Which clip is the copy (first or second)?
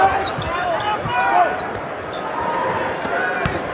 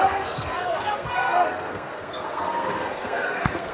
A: second